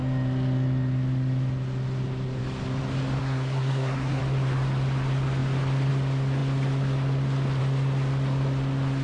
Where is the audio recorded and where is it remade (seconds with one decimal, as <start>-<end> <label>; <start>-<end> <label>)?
0.0-3.2 recorded; 3.2-4.2 remade; 4.2-9.0 recorded